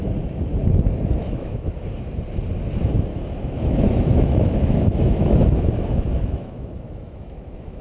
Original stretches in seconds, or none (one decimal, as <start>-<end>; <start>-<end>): 0.0-1.2; 1.8-3.1